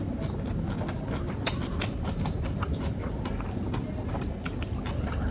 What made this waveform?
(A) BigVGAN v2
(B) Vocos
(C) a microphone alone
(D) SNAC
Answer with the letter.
C